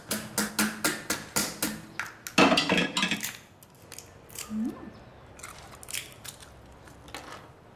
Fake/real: real